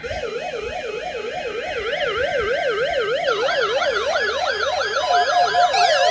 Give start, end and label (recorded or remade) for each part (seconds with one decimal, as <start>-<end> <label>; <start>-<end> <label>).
0.0-6.1 recorded